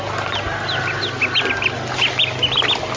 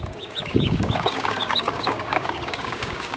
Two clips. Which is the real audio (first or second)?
first